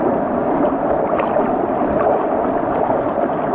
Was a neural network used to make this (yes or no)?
no